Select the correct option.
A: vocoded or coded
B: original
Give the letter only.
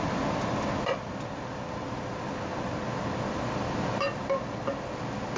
B